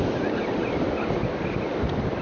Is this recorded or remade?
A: recorded